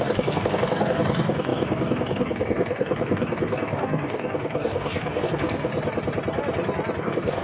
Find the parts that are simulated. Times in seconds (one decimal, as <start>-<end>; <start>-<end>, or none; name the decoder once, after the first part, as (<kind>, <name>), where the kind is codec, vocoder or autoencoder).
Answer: 0.0-5.7 (codec, DAC); 7.0-7.4